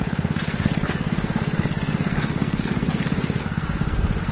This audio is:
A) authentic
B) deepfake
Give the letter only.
B